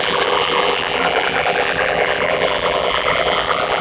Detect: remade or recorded remade